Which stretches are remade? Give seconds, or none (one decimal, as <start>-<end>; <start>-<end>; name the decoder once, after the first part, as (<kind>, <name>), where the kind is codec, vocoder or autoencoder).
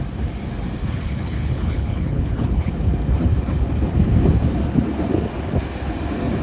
0.8-2.7 (codec, HILCodec)